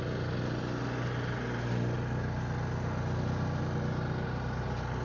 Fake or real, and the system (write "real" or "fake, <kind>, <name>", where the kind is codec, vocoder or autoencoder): real